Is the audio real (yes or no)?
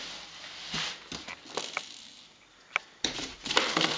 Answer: yes